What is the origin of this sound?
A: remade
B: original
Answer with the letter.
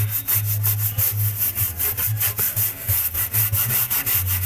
B